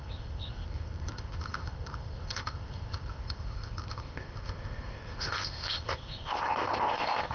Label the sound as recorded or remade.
remade